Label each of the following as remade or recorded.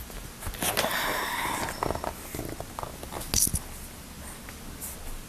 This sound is recorded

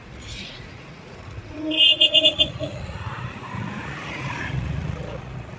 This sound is remade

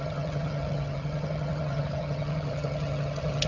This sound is remade